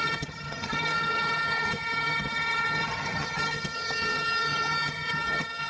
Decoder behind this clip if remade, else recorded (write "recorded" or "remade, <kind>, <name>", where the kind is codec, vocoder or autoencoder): remade, vocoder, HiFi-GAN